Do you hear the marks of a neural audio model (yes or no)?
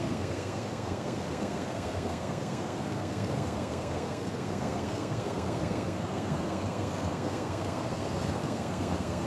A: yes